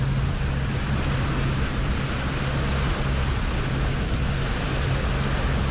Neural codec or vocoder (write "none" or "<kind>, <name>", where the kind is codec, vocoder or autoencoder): none